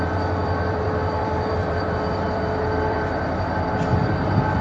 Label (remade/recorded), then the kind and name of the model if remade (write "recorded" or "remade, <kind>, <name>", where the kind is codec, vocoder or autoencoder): remade, vocoder, BigVGAN v2